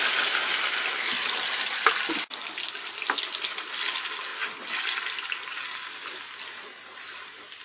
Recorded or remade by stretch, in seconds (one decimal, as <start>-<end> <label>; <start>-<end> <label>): 0.0-7.6 recorded